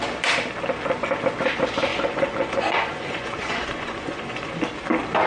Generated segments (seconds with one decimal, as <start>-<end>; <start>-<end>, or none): 1.9-4.5